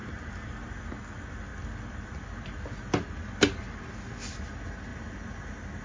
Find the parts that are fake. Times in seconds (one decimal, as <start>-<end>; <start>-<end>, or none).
none